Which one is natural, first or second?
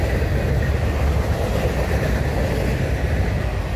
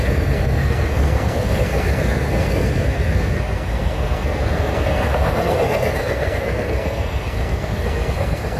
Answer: first